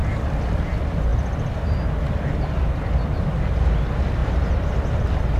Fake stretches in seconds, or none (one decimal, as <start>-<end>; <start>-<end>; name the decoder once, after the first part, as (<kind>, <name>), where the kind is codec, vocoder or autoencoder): 0.0-0.6 (vocoder, BigVGAN v2); 4.2-4.9

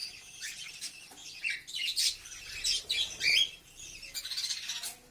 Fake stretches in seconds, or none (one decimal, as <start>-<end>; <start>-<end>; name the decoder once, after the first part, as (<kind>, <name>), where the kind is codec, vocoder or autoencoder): 0.0-0.7 (vocoder, BigVGAN v2)

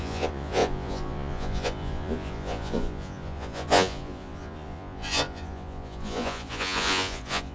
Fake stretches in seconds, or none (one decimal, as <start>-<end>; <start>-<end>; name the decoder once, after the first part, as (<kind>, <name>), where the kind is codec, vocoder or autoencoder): 0.0-7.5 (vocoder, Vocos)

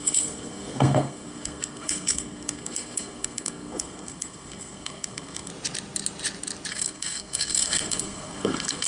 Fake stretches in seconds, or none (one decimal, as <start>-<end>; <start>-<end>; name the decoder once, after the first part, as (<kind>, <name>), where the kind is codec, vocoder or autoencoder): 0.0-5.5 (codec, SNAC); 6.7-8.9

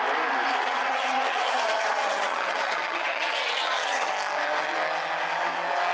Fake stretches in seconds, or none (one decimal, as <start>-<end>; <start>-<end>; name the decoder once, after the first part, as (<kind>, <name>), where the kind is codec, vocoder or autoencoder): 0.6-4.1 (vocoder, HiFi-GAN)

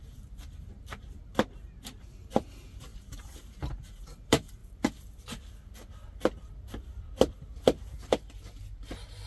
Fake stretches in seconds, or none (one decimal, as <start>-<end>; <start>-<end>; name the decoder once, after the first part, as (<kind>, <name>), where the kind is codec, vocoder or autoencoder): 0.0-4.6 (vocoder, BigVGAN v2)